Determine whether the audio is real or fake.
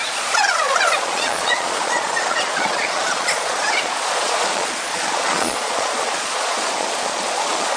fake